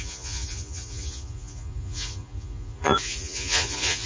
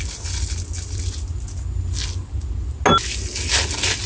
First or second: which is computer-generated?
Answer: first